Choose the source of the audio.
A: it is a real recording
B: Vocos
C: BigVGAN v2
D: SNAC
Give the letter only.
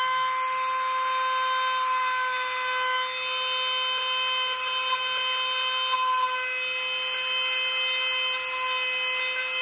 A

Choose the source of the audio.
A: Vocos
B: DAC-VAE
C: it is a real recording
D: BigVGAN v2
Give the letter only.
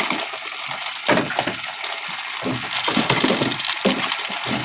C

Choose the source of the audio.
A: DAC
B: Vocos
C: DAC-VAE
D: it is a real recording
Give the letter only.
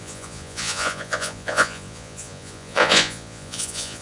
B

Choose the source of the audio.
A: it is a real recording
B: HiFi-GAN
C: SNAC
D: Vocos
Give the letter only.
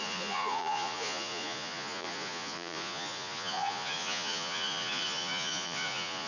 D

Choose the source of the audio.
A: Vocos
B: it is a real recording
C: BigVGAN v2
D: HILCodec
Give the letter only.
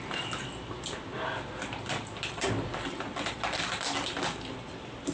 B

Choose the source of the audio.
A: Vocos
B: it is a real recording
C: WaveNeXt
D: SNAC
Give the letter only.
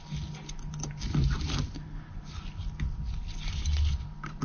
B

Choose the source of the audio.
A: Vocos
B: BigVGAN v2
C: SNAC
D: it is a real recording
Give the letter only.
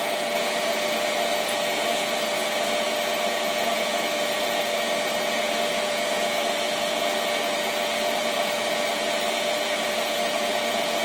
A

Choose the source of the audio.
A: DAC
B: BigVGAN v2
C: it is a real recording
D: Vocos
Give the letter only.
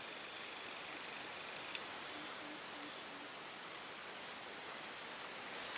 C